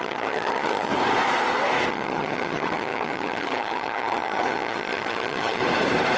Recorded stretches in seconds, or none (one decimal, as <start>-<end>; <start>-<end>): 0.9-1.9; 5.6-6.2